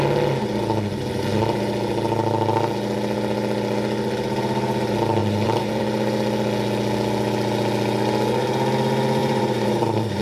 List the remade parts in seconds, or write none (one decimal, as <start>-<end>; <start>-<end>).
5.2-5.8; 9.2-10.2